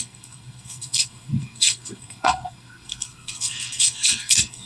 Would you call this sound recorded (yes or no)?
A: no